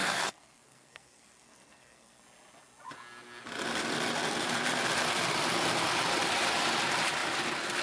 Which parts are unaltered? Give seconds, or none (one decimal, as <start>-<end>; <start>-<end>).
2.2-7.8